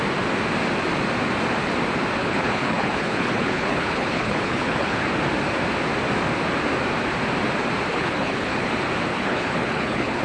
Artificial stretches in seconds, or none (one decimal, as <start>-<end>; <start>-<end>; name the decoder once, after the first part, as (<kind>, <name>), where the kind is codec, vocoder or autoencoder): 2.2-5.0 (codec, HILCodec); 7.9-8.7; 9.1-10.2

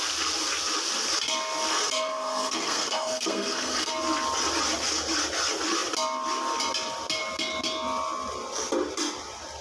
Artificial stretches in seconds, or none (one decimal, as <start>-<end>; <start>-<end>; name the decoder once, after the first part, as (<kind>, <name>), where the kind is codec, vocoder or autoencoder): 1.7-3.9 (codec, SNAC)

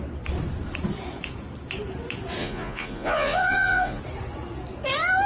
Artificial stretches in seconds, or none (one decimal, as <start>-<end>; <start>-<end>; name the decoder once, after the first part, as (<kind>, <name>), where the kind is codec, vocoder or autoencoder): 2.4-4.0 (vocoder, Vocos)